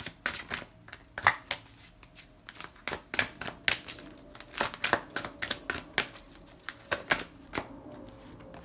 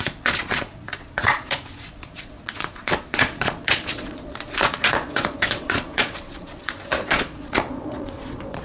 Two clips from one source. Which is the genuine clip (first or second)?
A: first